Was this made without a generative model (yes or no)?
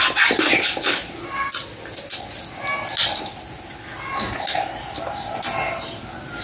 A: yes